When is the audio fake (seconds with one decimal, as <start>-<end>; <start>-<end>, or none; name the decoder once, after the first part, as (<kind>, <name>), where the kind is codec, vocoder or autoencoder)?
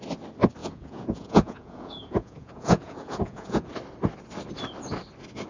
0.6-3.7 (vocoder, Vocos)